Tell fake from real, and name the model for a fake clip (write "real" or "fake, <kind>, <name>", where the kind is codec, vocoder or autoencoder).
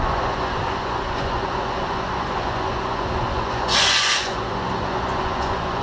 fake, vocoder, Vocos